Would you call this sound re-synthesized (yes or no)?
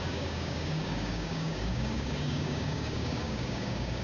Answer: yes